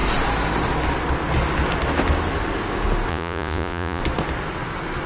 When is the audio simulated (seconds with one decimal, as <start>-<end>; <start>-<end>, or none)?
3.1-4.0

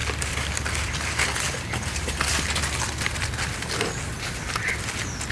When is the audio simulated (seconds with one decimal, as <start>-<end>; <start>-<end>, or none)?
none

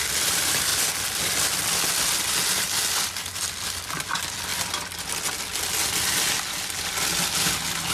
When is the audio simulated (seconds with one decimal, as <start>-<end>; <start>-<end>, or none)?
none